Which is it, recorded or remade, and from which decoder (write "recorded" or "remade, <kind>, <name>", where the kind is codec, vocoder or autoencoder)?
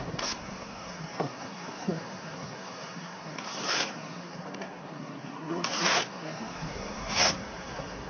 remade, codec, SNAC